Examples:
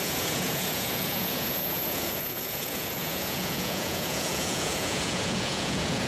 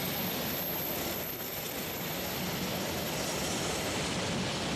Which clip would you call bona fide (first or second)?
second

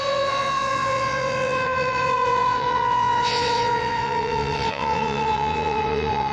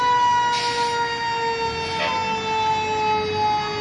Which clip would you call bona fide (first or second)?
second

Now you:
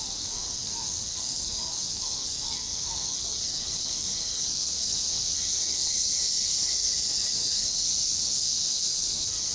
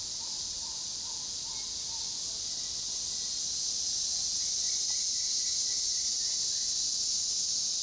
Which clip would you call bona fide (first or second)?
second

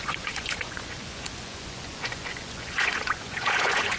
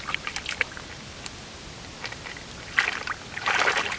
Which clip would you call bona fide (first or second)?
second